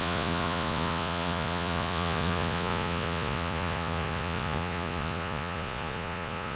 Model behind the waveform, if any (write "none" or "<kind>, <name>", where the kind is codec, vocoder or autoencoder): vocoder, Vocos